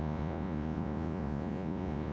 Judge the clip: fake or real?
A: fake